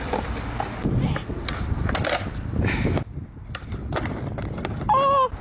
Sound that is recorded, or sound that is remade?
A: recorded